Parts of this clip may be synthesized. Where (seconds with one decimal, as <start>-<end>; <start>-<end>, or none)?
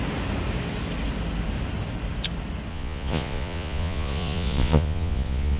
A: 2.7-5.6